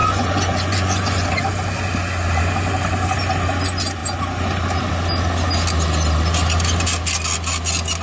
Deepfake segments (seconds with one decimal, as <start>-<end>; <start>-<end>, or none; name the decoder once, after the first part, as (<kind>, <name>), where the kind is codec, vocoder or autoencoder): 0.0-1.3 (vocoder, Vocos)